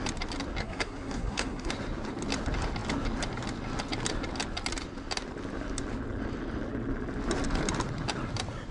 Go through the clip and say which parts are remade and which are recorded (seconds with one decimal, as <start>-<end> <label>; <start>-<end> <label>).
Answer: 0.0-0.6 recorded; 0.6-1.7 remade; 1.7-8.7 recorded